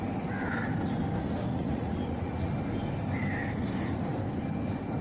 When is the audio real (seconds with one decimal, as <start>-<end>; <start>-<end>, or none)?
0.0-1.5; 2.5-5.0